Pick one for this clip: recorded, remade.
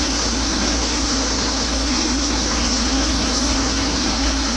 remade